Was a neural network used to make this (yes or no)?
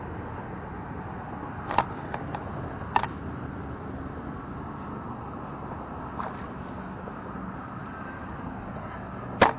no